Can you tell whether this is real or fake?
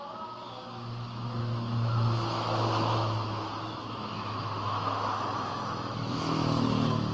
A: fake